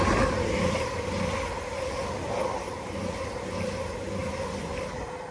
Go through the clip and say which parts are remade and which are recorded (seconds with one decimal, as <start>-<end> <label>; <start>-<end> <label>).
0.0-4.2 recorded; 4.2-4.8 remade; 4.8-5.3 recorded